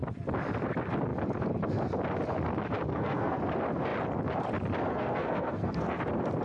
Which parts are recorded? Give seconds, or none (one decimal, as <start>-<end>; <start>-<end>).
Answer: 0.0-2.9; 3.4-4.9; 6.0-6.4